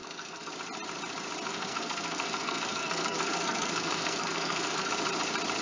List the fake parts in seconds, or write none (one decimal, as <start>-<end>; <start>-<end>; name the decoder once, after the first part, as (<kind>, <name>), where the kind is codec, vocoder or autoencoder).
0.0-0.5 (codec, SNAC); 1.5-4.9